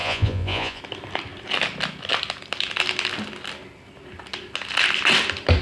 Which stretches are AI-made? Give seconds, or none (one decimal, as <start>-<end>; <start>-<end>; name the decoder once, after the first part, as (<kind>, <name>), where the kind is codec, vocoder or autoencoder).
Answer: 0.0-0.8 (vocoder, Vocos)